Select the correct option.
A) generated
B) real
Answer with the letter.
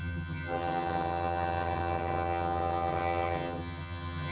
A